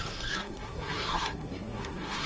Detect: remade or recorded remade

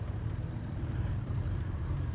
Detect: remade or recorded remade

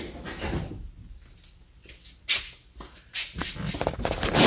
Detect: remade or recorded recorded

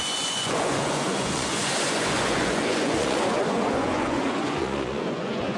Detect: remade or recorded remade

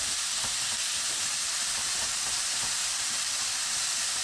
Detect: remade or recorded remade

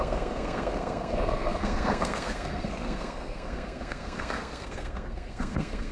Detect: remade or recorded remade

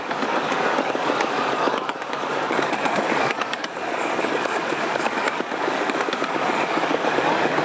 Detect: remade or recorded remade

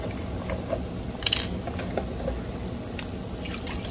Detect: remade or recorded recorded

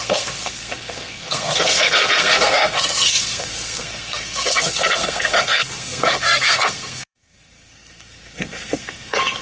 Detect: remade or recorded remade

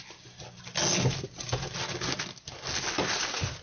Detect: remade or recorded recorded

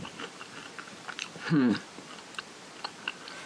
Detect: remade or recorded recorded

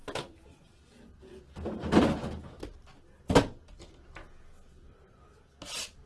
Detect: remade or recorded recorded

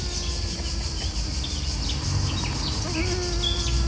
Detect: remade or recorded recorded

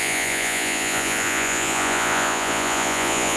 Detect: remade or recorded remade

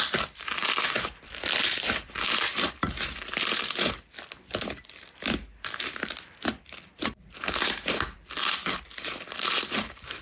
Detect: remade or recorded remade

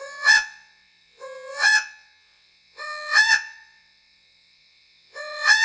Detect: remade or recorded remade